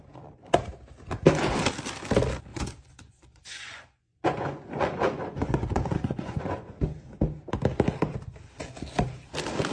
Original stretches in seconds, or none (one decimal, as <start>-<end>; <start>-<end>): 0.0-2.5; 6.8-9.7